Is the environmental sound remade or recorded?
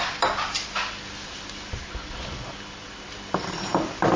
recorded